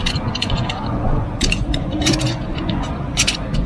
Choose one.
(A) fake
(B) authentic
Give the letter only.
A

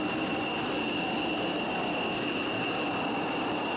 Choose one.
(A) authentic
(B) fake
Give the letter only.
A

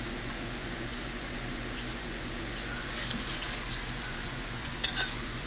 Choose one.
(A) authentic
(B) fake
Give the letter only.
B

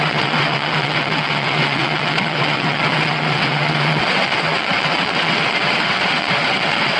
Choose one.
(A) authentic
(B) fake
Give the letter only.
B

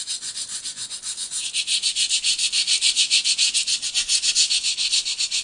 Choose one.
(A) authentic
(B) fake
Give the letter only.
B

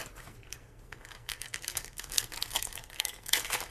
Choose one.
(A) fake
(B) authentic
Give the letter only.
A